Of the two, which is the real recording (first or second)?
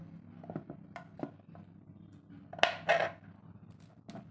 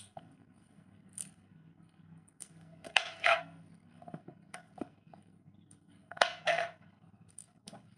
first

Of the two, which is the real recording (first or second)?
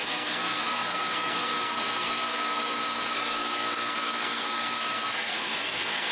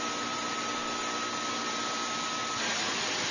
second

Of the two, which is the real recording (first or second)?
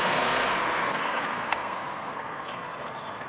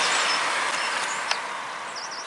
second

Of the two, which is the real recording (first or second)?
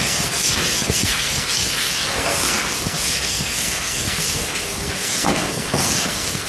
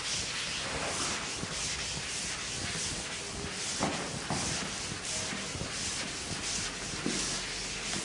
second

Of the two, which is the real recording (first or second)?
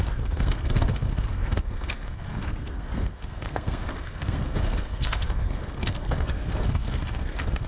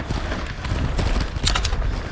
second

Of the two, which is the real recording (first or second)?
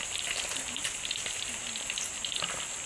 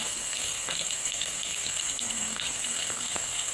first